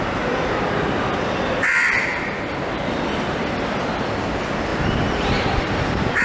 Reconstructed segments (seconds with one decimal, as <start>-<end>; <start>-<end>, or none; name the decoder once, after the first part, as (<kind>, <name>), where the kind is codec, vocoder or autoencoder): 4.7-6.2 (vocoder, BigVGAN v2)